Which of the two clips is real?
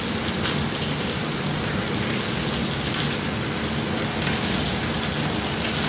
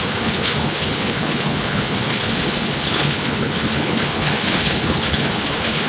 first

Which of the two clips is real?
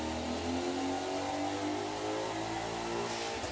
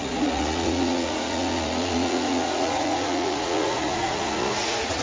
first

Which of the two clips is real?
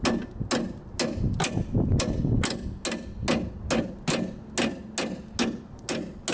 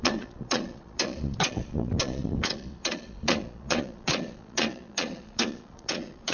first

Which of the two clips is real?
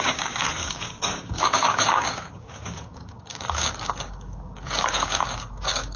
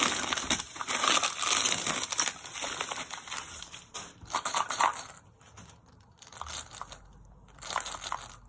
second